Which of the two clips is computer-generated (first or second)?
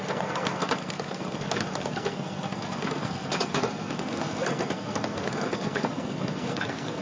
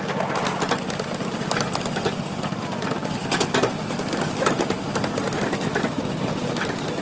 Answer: first